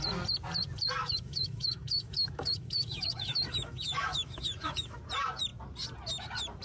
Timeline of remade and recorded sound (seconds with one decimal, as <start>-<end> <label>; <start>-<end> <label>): 0.0-1.0 recorded; 1.0-5.0 remade; 5.0-6.6 recorded